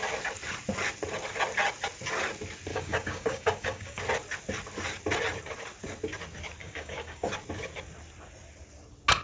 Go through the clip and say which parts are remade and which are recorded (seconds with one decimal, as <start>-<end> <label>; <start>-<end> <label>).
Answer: 0.0-2.7 recorded; 2.7-4.0 remade; 4.0-6.6 recorded; 6.6-7.3 remade; 7.3-9.2 recorded